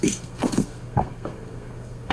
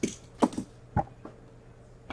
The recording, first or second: second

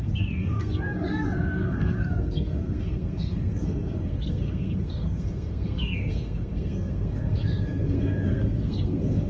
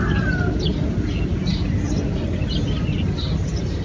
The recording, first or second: second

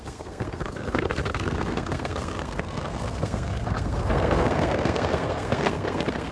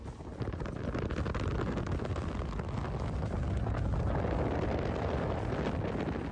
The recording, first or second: second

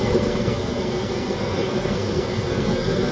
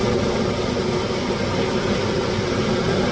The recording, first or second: second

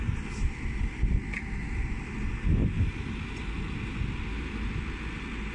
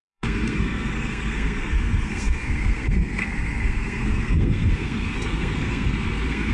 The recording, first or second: first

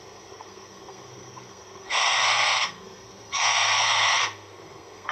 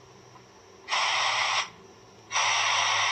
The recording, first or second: second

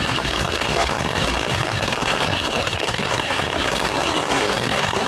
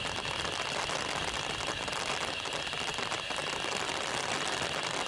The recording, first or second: second